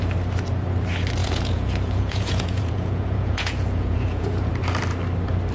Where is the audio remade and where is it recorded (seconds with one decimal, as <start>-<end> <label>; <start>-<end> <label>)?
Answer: 0.0-1.2 recorded; 1.2-4.5 remade; 4.5-5.5 recorded